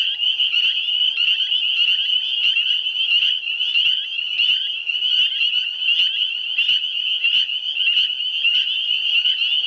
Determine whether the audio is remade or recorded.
recorded